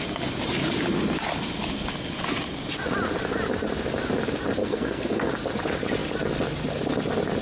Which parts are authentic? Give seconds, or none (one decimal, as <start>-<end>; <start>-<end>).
0.0-4.6; 5.3-7.4

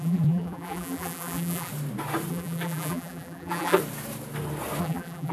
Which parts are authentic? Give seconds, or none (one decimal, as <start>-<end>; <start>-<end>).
1.7-2.3; 3.8-4.8

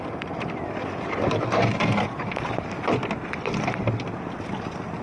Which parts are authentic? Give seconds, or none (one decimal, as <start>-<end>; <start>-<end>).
0.0-5.0

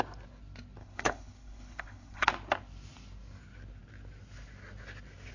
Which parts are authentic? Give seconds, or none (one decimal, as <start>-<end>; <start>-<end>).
0.0-0.8; 2.3-5.3